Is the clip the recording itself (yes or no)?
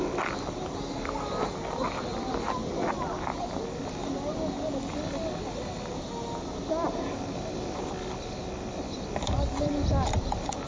yes